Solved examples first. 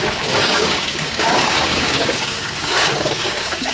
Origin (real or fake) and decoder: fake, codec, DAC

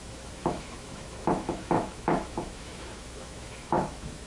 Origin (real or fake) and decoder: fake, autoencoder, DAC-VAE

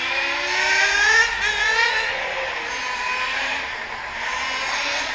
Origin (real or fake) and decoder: real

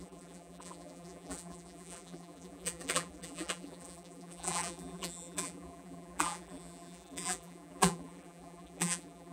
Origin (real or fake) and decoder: fake, vocoder, BigVGAN v2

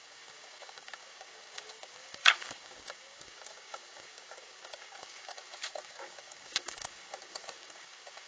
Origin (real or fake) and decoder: fake, codec, DAC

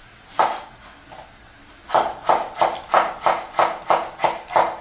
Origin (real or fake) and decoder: real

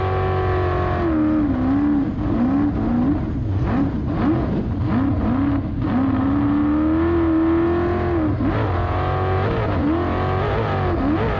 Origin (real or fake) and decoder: real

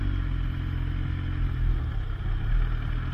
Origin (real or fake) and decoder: real